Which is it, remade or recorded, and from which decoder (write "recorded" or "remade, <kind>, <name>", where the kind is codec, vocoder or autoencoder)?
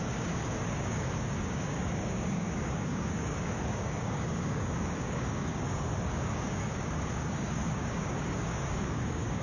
remade, codec, DAC